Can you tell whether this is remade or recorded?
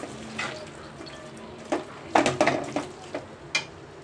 recorded